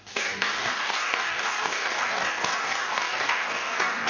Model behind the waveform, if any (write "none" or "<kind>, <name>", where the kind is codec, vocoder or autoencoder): codec, DAC